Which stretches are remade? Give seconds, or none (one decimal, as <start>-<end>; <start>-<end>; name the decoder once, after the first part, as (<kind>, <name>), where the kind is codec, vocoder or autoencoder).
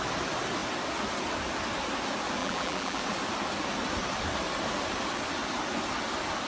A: 2.4-3.0 (vocoder, BigVGAN v2)